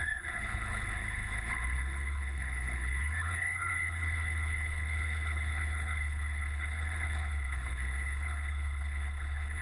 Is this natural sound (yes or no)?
no